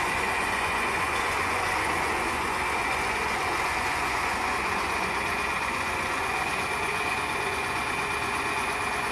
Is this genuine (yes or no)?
no